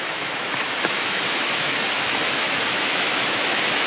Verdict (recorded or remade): remade